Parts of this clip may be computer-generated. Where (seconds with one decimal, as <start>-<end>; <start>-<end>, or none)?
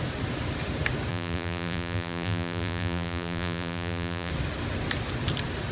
1.1-4.3